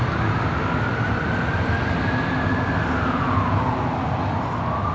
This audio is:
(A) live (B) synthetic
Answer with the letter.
A